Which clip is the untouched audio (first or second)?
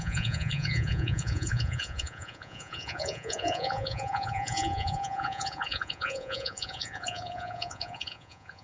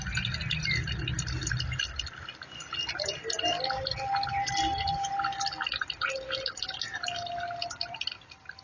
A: second